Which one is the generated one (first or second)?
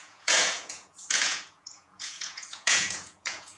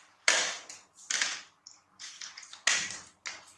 first